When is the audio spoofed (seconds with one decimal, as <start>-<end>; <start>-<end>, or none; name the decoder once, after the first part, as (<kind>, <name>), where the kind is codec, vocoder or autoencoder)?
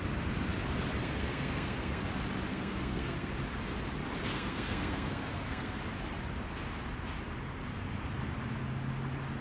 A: 1.0-2.1 (codec, SNAC); 2.5-3.3; 4.3-5.8